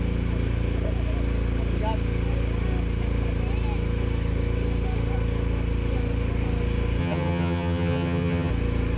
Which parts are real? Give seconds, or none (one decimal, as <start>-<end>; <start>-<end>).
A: 0.0-7.0; 8.5-9.0